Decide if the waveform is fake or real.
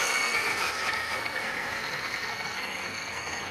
fake